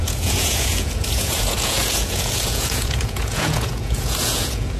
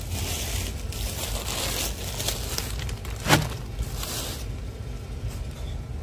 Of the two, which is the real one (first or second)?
second